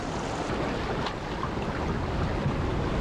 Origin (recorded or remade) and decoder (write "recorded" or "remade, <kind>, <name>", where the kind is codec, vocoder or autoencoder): recorded